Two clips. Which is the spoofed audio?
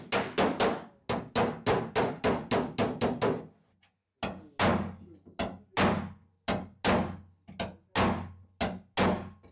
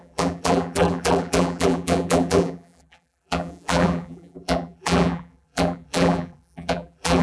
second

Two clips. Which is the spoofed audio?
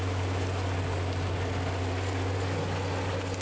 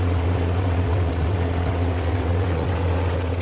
second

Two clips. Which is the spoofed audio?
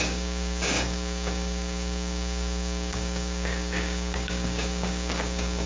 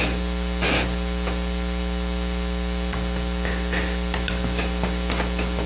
first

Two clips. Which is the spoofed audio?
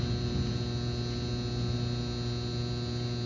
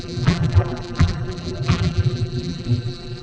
second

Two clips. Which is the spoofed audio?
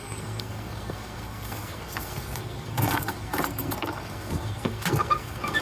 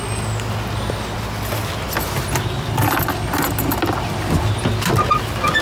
first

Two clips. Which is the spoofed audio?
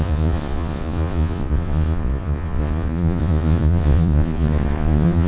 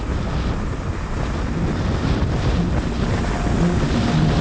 first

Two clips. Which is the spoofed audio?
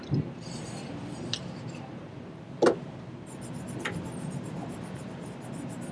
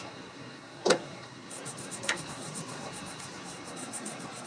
second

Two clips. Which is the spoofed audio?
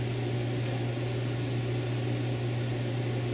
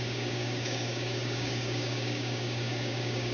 second